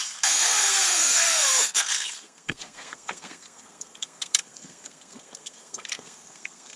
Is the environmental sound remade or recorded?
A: remade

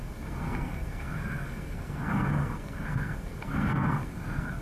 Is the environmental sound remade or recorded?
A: remade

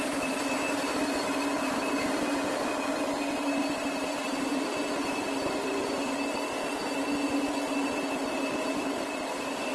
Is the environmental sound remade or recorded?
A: recorded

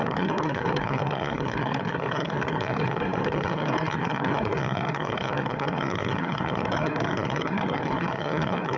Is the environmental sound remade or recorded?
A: remade